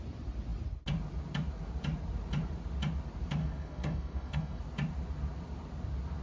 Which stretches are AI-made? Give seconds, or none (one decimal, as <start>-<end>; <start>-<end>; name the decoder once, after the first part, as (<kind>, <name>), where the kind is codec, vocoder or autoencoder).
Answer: 3.4-4.6 (codec, SNAC)